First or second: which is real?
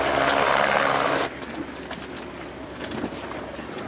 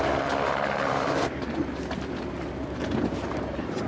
first